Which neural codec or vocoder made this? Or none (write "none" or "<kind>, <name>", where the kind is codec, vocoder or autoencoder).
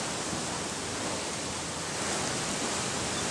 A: none